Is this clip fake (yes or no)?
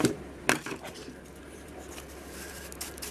no